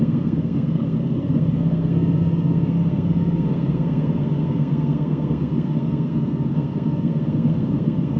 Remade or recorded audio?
remade